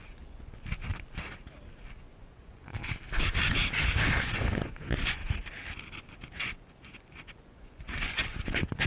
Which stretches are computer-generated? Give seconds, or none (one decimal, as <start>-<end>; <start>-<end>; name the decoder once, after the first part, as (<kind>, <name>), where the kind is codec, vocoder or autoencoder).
0.0-0.9 (vocoder, Vocos); 1.9-2.8; 4.2-5.2; 6.4-8.9

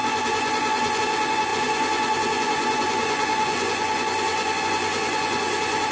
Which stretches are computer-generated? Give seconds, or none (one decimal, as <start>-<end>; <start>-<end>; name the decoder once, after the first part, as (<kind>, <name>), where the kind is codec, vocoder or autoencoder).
0.0-5.9 (vocoder, Vocos)

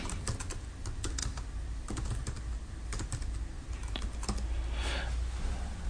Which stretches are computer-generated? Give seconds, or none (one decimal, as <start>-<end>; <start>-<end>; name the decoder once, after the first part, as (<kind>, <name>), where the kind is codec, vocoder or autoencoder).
none

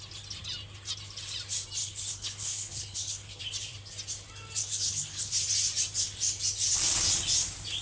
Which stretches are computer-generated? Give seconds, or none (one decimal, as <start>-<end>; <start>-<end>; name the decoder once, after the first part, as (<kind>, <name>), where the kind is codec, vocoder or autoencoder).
1.8-3.4 (codec, HILCodec); 4.6-5.4